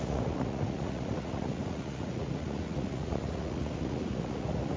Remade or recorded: remade